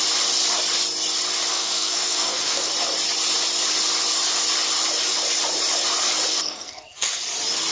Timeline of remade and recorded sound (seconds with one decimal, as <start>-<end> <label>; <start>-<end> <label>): 0.0-1.5 recorded; 1.5-2.7 remade; 2.7-6.3 recorded; 6.3-7.2 remade; 7.2-7.7 recorded